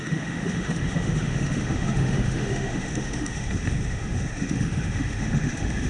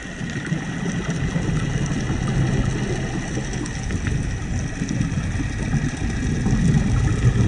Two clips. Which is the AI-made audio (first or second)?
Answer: first